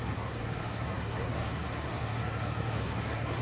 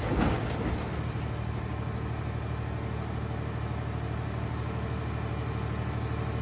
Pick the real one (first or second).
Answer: second